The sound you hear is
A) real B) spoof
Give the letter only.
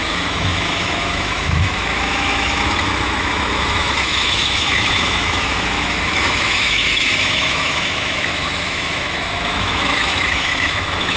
B